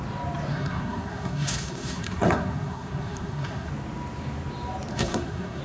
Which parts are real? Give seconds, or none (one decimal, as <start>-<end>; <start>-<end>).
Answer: 0.0-0.5; 3.7-4.9